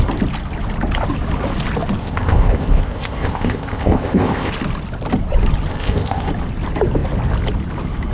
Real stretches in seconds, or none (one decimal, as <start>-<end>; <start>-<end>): 0.0-2.0; 4.5-5.7; 6.3-8.1